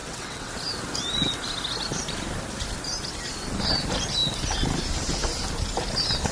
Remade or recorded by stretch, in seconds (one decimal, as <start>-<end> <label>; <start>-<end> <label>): 0.0-0.5 remade; 0.5-6.3 recorded